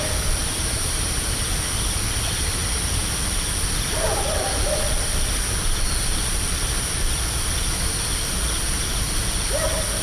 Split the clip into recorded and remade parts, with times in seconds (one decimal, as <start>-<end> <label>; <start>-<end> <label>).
0.0-0.4 recorded; 0.4-1.4 remade; 1.4-10.0 recorded